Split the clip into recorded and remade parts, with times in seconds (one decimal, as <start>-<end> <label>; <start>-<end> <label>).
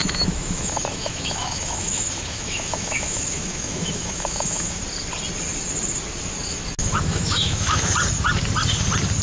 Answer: 0.0-4.8 remade; 4.8-6.8 recorded; 6.8-7.9 remade; 7.9-9.2 recorded